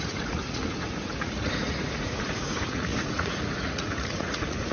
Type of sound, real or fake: fake